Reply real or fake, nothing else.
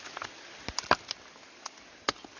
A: real